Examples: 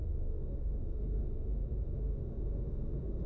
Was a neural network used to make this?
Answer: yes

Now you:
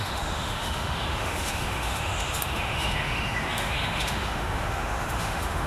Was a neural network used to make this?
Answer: yes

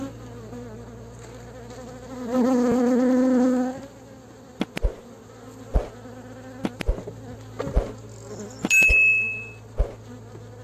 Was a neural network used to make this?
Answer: no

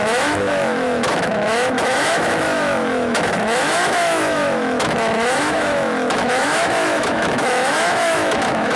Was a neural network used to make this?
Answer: yes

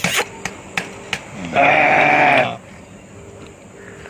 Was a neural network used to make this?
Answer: no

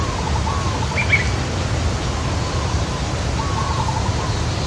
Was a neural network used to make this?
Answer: no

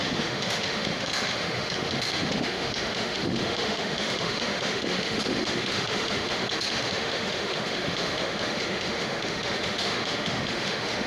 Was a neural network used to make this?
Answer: yes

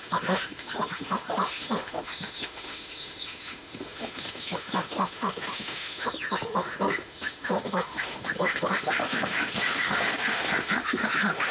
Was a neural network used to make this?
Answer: yes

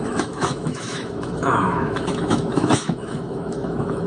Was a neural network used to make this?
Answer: yes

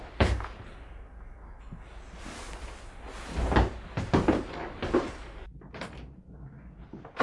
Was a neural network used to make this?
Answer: no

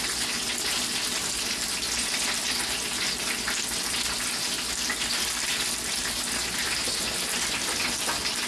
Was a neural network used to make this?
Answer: no